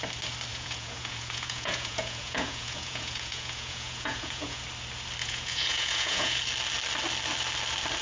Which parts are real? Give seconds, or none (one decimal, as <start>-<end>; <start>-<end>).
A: 0.0-0.5; 4.6-5.2; 6.4-8.0